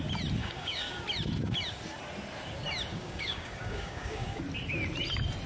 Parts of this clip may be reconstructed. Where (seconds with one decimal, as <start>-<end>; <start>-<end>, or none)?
0.4-1.0; 2.9-4.4

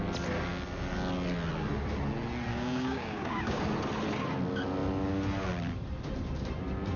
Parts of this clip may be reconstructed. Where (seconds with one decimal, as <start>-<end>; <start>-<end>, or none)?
2.5-3.6

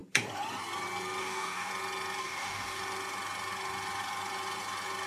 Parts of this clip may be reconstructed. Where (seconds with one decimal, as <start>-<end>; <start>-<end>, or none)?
1.2-1.7; 2.2-2.8